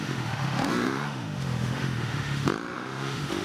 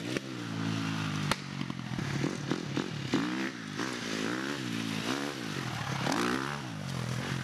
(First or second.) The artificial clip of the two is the first